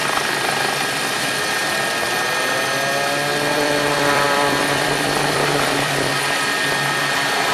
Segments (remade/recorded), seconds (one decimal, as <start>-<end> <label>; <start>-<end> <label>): 0.0-2.1 remade; 2.1-3.3 recorded; 3.3-6.1 remade; 6.1-7.5 recorded